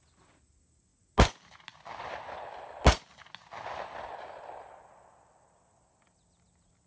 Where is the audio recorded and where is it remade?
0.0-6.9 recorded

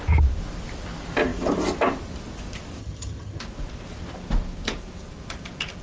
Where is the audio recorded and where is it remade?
0.0-2.8 recorded; 2.8-3.4 remade; 3.4-5.8 recorded

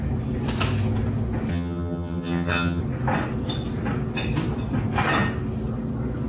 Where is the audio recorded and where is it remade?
0.0-1.5 recorded; 1.5-2.8 remade; 2.8-6.3 recorded

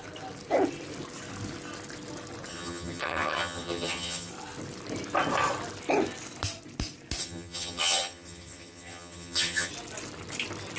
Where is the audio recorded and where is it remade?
0.0-2.5 recorded; 2.5-4.3 remade; 4.3-7.2 recorded; 7.2-9.7 remade; 9.7-10.8 recorded

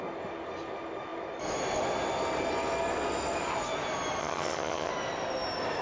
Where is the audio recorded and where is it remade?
0.0-4.2 recorded; 4.2-4.9 remade; 4.9-5.8 recorded